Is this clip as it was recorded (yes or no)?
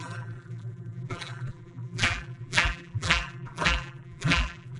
no